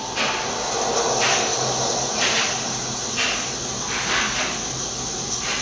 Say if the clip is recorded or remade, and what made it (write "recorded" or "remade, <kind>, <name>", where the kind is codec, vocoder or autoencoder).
recorded